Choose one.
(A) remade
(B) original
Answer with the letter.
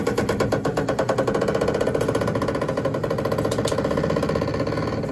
B